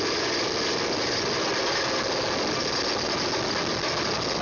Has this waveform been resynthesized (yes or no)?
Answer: no